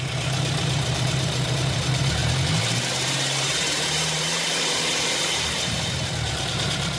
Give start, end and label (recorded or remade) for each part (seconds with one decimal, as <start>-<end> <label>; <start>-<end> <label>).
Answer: 0.0-2.2 remade; 2.2-2.9 recorded; 2.9-7.0 remade

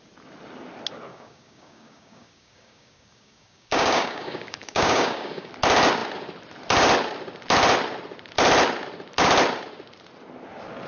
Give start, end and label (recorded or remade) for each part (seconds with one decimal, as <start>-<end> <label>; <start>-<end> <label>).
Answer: 0.0-1.1 recorded; 1.1-5.5 remade; 5.5-10.9 recorded

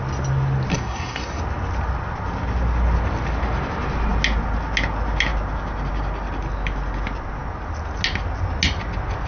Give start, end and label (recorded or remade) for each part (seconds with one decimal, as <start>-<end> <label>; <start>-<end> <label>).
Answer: 0.0-0.7 recorded; 0.7-1.4 remade; 1.4-9.3 recorded